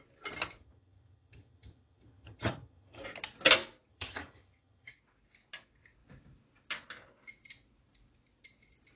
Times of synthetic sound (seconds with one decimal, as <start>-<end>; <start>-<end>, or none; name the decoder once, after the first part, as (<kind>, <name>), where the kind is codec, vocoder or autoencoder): 0.6-3.0 (vocoder, HiFi-GAN); 3.9-4.9